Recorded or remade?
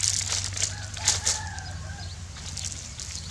recorded